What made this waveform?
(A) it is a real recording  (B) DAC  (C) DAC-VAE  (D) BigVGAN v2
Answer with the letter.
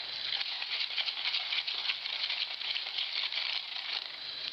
A